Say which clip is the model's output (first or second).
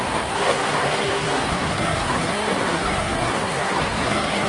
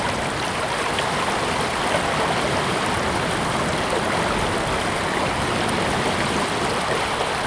first